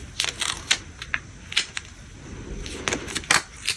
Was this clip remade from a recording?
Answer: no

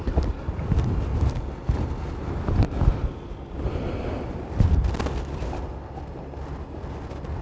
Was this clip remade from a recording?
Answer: no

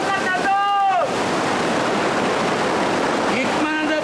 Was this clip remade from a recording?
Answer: no